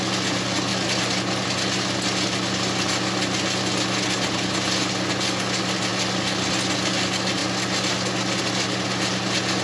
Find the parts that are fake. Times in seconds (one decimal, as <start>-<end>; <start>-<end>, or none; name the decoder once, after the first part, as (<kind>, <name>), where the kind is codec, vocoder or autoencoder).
none